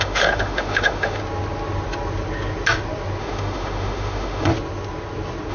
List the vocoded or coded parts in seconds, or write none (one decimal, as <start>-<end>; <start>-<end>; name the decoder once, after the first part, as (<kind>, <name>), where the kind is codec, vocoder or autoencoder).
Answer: 0.0-1.2 (autoencoder, DAC-VAE); 3.2-4.5